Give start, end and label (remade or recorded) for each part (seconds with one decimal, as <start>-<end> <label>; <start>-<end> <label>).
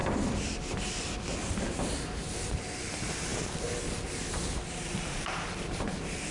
0.0-6.3 recorded